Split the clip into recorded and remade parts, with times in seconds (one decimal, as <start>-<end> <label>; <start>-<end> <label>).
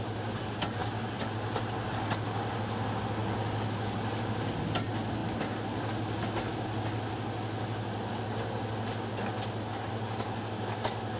0.0-3.2 recorded; 3.2-4.3 remade; 4.3-11.2 recorded